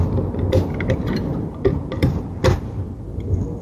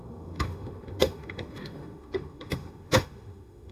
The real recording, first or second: first